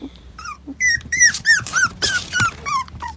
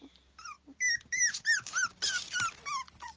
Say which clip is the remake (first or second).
first